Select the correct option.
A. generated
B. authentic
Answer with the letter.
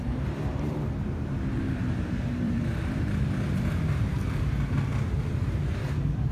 A